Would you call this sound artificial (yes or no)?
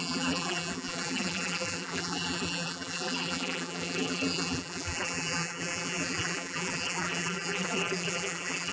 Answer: yes